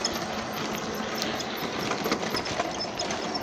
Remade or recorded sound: recorded